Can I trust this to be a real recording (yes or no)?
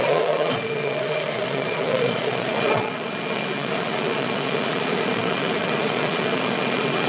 no